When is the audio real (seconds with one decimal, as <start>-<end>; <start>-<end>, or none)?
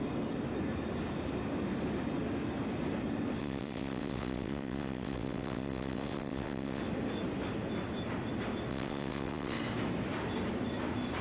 0.0-3.4; 6.8-8.7; 9.6-11.2